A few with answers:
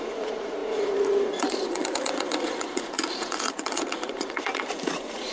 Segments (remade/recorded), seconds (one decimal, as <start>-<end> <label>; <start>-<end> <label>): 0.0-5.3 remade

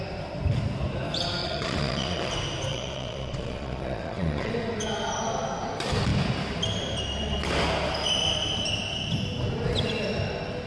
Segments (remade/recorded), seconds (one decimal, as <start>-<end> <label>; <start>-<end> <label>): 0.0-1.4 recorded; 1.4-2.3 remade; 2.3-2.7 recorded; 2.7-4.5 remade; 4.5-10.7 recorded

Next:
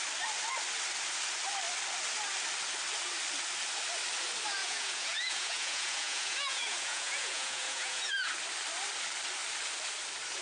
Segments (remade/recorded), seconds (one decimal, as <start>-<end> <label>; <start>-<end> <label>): 0.0-4.6 recorded; 4.6-8.3 remade; 8.3-10.4 recorded

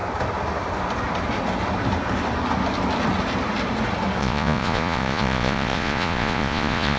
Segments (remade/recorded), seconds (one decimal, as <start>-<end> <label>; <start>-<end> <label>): 0.0-4.2 recorded; 4.2-7.0 remade

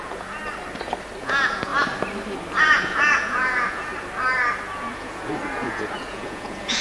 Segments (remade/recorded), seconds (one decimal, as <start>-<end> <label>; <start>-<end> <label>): 0.0-0.4 remade; 0.4-1.2 recorded; 1.2-1.7 remade; 1.7-2.6 recorded; 2.6-3.9 remade; 3.9-4.9 recorded; 4.9-6.8 remade

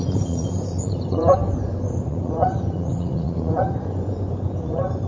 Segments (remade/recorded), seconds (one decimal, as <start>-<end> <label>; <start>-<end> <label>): 0.0-5.1 remade

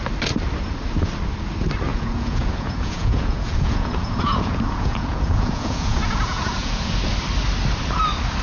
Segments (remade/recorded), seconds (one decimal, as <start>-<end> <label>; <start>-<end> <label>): 0.0-1.9 recorded; 1.9-6.9 remade; 6.9-8.4 recorded

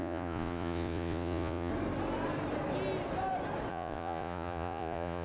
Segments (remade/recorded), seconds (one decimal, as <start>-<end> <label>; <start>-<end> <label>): 0.0-1.7 remade; 1.7-3.7 recorded; 3.7-5.2 remade